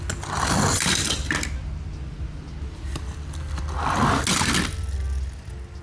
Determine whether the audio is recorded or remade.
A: recorded